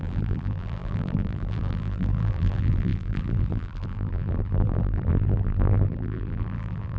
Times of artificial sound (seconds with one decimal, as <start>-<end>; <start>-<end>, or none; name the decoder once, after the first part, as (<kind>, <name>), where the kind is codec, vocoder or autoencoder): 0.0-7.0 (vocoder, BigVGAN v2)